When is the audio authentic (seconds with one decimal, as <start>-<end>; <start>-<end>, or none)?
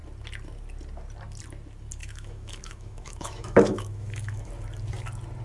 0.0-2.0; 4.5-5.4